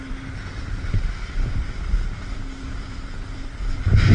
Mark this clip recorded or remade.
remade